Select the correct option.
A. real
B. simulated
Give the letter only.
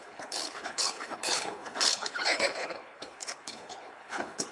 B